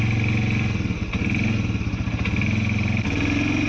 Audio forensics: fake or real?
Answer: real